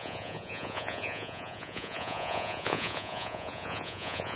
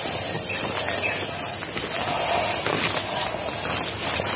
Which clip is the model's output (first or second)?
first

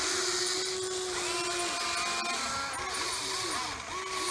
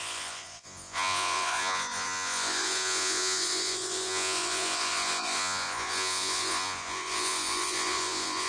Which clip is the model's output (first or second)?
second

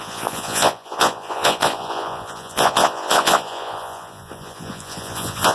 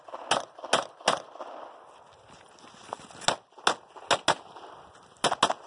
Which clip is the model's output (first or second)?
first